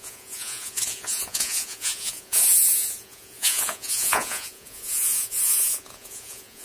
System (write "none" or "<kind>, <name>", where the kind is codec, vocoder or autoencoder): vocoder, Vocos